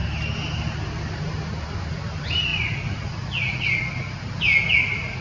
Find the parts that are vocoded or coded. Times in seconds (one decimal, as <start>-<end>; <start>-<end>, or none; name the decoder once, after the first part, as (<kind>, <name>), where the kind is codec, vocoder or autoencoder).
none